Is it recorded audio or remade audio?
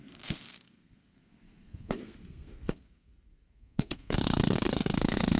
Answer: remade